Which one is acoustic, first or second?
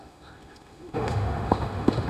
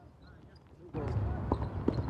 second